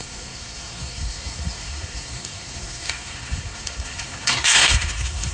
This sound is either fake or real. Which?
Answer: fake